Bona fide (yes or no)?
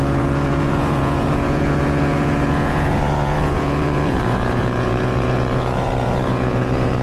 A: no